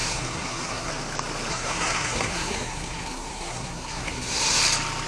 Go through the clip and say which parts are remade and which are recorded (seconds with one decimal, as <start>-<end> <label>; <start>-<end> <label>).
0.0-0.9 remade; 0.9-1.5 recorded; 1.5-4.6 remade; 4.6-5.1 recorded